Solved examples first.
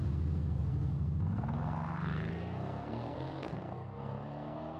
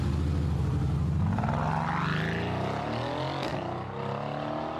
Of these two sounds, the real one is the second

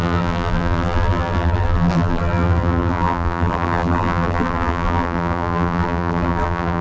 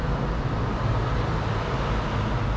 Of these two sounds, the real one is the second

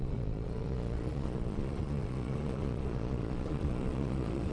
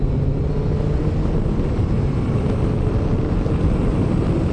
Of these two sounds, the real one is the second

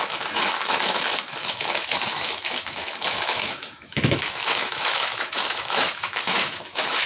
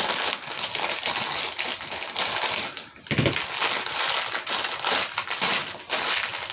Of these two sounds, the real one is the second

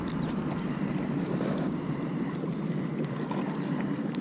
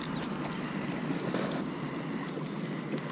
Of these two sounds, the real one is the second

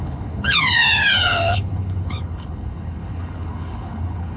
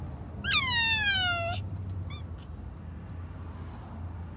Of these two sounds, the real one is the second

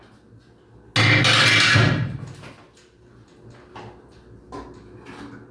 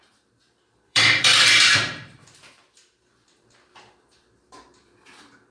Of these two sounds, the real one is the first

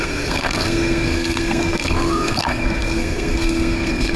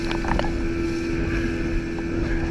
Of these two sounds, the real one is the second